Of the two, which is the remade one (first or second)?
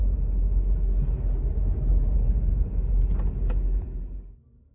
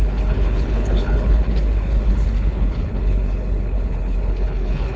second